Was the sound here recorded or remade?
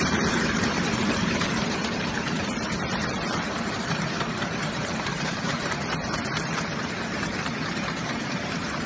remade